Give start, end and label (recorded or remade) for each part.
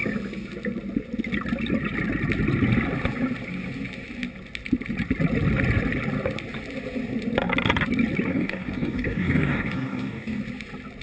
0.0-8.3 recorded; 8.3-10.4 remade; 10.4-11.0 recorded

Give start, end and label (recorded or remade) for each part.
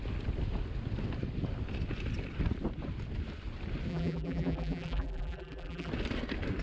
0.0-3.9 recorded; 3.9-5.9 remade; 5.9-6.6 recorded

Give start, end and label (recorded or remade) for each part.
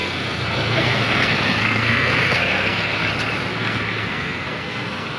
0.0-3.1 remade; 3.1-3.5 recorded; 3.5-5.2 remade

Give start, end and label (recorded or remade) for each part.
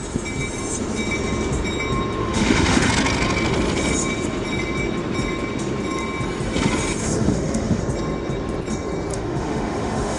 0.0-2.2 recorded; 2.2-2.9 remade; 2.9-7.0 recorded; 7.0-7.8 remade; 7.8-9.1 recorded; 9.1-10.2 remade